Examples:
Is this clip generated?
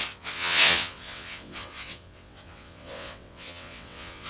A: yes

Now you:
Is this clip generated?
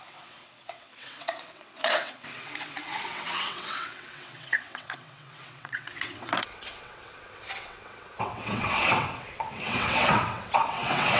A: yes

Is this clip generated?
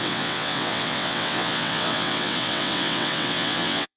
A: yes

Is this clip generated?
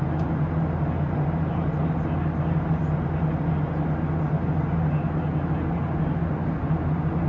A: no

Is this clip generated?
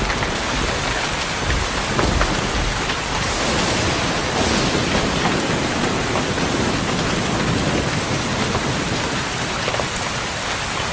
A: no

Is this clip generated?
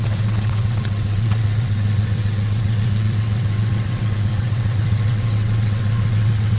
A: yes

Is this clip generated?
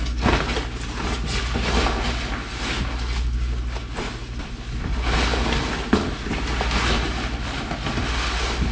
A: no